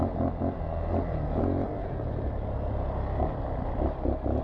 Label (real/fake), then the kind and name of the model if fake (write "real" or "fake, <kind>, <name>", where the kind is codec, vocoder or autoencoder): real